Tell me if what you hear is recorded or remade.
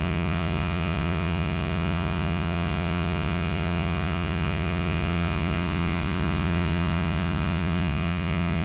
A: remade